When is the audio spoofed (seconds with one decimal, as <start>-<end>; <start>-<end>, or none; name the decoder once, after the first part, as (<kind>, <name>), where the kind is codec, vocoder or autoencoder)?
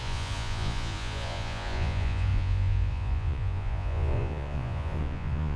0.0-5.6 (vocoder, Vocos)